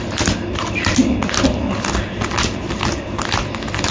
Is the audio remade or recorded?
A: recorded